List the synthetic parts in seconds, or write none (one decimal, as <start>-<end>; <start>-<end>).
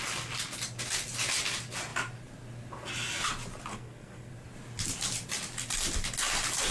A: 3.7-4.3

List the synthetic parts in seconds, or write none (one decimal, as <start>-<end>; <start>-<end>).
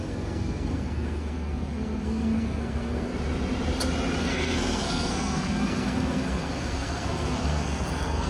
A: 0.0-3.1; 4.2-8.3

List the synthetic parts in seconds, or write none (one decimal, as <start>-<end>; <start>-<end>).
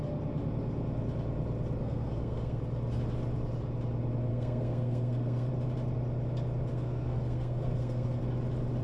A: 1.8-2.6; 4.3-5.5; 6.7-8.2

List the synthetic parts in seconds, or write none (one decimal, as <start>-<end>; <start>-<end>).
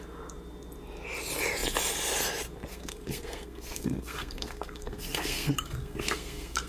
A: 2.7-6.7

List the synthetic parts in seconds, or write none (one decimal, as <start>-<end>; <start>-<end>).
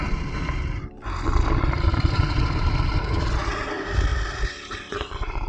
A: none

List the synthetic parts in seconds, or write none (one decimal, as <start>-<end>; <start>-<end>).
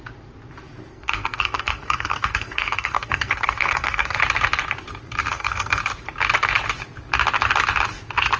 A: 0.9-4.2; 5.3-5.8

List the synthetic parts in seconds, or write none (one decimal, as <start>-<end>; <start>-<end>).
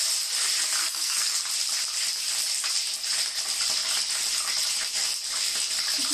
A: 0.8-1.4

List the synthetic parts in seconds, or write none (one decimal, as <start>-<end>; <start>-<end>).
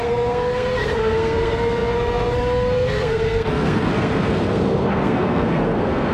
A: 0.0-6.1